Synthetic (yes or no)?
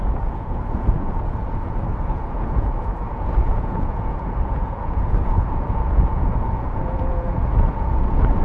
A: yes